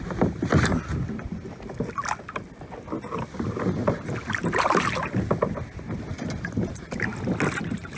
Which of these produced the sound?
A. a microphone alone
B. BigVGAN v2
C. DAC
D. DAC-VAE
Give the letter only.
A